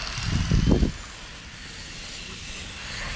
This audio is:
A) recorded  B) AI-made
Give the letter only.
A